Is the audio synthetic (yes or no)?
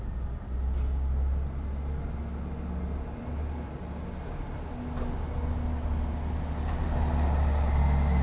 no